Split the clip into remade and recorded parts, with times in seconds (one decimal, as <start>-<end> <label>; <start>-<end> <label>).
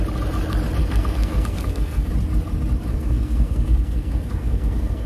0.0-0.8 recorded; 0.8-2.1 remade; 2.1-2.9 recorded; 2.9-5.1 remade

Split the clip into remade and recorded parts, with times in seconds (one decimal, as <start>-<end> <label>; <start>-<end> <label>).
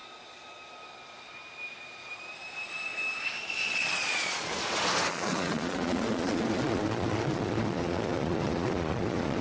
0.0-3.4 recorded; 3.4-4.5 remade; 4.5-5.1 recorded; 5.1-9.4 remade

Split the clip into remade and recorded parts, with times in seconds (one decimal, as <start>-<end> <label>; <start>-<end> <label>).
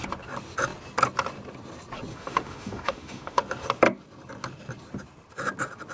0.0-2.1 recorded; 2.1-3.4 remade; 3.4-5.9 recorded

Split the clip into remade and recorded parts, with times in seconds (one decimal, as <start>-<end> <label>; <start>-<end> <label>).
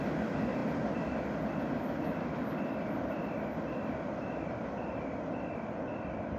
0.0-6.4 recorded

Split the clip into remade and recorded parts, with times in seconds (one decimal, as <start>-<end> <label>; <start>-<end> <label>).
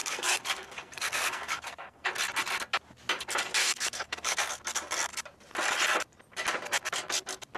0.0-2.1 remade; 2.1-3.6 recorded; 3.6-4.5 remade; 4.5-7.6 recorded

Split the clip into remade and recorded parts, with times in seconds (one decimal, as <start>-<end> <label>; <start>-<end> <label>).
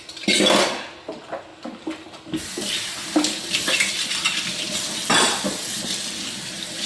0.0-6.9 recorded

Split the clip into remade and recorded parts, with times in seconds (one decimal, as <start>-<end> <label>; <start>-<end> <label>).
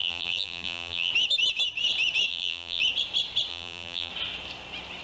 0.0-1.1 remade; 1.1-2.3 recorded; 2.3-2.8 remade; 2.8-3.5 recorded; 3.5-4.1 remade; 4.1-5.0 recorded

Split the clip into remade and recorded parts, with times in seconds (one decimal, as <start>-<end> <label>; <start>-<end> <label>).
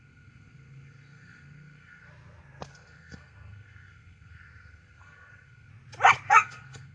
0.0-2.1 remade; 2.1-2.7 recorded; 2.7-5.7 remade; 5.7-6.3 recorded; 6.3-6.9 remade